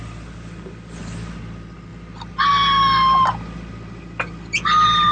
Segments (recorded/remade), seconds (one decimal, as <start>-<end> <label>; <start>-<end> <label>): 0.0-5.1 recorded